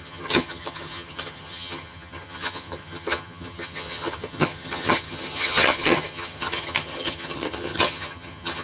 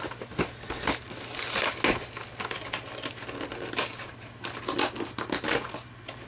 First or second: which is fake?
first